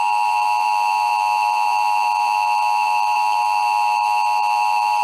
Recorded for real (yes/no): no